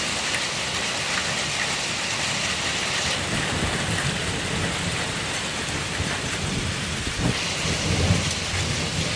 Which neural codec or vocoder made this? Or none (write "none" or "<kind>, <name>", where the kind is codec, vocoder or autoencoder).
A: none